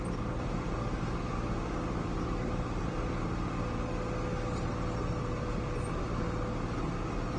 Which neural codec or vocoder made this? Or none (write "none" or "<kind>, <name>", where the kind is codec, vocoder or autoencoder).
none